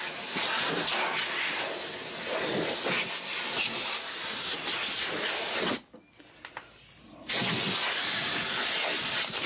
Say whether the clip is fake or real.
real